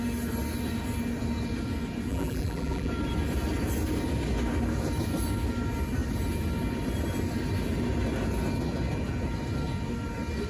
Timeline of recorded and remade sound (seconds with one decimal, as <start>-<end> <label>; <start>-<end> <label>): 0.0-2.1 recorded; 2.1-2.9 remade; 2.9-10.5 recorded